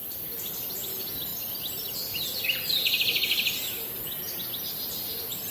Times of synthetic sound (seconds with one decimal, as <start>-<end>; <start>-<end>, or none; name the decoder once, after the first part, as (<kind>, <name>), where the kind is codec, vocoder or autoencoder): none